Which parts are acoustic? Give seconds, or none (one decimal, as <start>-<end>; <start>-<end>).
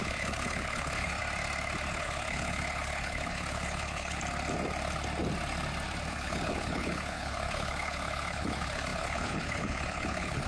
1.2-1.9; 4.2-6.1